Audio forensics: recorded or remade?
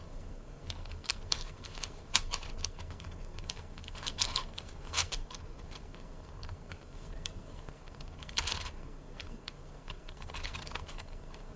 remade